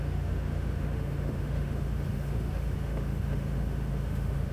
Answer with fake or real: fake